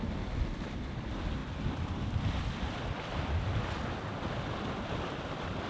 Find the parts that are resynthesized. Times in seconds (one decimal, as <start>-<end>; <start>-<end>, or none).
none